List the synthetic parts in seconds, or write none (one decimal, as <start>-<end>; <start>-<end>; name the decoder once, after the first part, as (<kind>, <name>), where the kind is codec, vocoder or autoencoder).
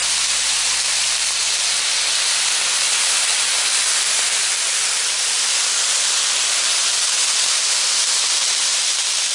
none